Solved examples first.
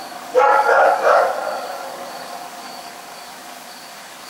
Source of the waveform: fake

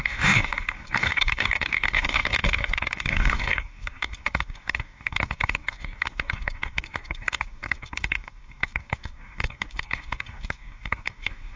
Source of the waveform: fake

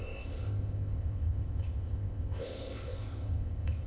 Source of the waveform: fake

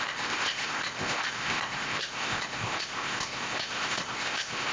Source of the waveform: fake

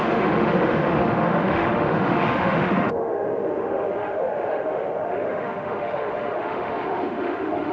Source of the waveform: fake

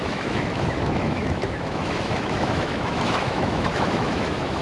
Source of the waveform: fake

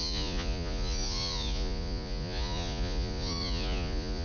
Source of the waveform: fake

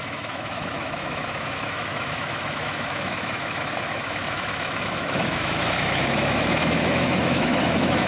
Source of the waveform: fake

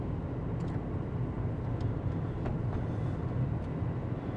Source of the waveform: real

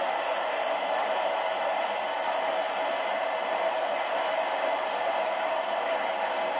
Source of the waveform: fake